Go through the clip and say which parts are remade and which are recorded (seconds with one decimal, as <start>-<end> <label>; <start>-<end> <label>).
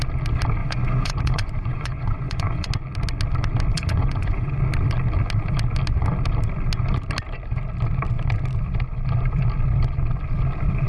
0.0-0.6 recorded; 0.6-2.7 remade; 2.7-3.7 recorded; 3.7-4.6 remade; 4.6-10.9 recorded